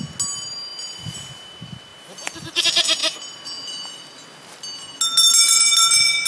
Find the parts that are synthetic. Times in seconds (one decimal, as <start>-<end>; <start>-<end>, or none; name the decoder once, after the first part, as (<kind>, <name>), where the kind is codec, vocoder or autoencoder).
1.9-2.6 (vocoder, BigVGAN v2)